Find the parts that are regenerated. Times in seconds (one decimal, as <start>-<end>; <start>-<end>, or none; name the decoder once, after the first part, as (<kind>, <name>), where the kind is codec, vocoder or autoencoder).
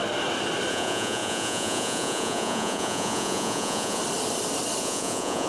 0.7-4.0 (vocoder, Vocos); 4.8-5.5